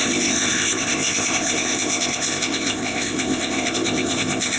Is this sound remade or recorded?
remade